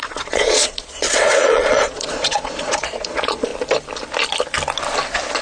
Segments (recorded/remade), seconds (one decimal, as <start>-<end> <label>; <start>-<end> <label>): 0.0-3.5 remade; 3.5-5.4 recorded